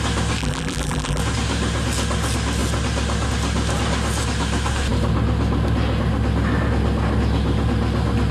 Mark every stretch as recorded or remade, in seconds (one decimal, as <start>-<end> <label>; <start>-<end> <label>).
0.0-0.4 recorded; 0.4-1.2 remade; 1.2-8.3 recorded